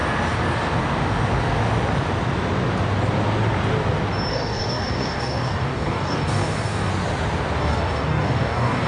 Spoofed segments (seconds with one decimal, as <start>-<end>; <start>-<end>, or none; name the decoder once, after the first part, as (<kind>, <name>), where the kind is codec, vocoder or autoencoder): 4.3-6.9 (codec, DAC); 7.6-8.9